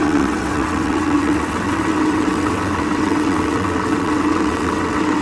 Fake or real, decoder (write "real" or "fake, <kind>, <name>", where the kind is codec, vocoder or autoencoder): fake, vocoder, WaveNeXt